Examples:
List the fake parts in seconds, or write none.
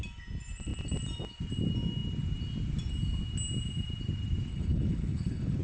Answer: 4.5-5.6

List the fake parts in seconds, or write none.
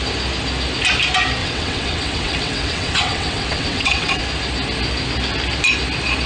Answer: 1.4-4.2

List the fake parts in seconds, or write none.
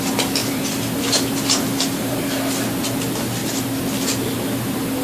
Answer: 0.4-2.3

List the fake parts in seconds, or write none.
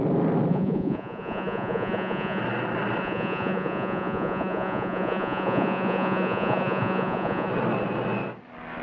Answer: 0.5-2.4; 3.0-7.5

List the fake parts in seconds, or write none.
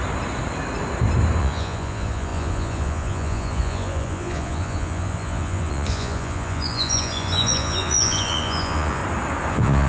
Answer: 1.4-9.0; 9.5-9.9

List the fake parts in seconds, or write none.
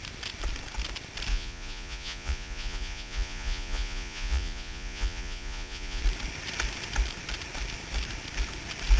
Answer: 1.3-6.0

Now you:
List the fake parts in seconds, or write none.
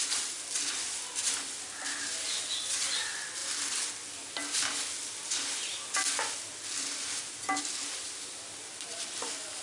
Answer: none